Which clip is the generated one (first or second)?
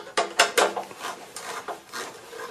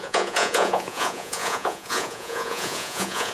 second